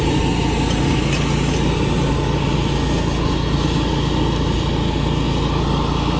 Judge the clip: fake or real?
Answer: real